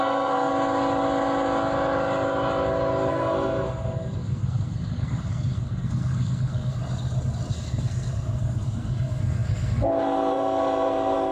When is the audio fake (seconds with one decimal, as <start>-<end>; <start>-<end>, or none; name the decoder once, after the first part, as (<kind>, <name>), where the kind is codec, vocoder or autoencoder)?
0.0-0.5 (codec, SNAC); 3.1-6.8; 7.5-11.3